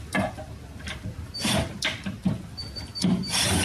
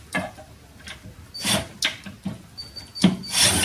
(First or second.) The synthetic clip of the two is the first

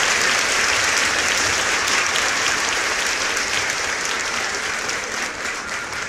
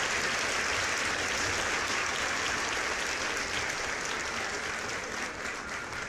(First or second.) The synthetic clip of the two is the first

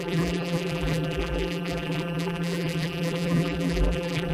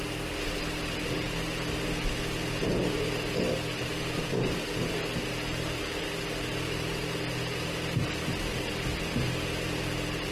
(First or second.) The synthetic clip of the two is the first